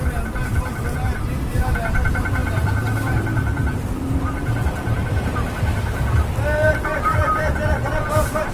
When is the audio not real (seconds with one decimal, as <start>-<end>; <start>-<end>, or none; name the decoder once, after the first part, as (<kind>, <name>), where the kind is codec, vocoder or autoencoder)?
0.0-8.5 (vocoder, BigVGAN v2)